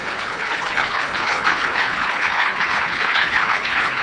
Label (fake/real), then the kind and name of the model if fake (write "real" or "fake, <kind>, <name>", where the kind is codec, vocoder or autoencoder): fake, codec, HILCodec